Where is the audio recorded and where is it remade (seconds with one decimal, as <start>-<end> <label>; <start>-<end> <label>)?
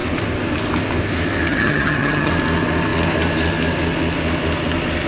0.0-1.5 recorded; 1.5-2.3 remade; 2.3-5.1 recorded